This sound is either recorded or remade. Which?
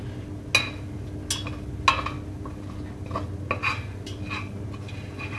recorded